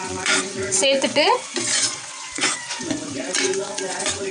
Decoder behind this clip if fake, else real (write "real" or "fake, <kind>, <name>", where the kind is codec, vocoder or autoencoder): fake, vocoder, Vocos